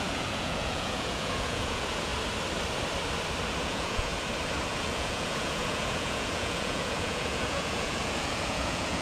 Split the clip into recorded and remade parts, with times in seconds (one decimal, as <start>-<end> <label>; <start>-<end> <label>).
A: 0.0-2.1 remade; 2.1-3.6 recorded; 3.6-4.1 remade; 4.1-4.7 recorded; 4.7-9.0 remade